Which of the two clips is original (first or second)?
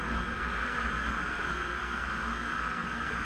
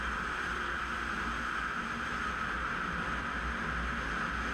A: second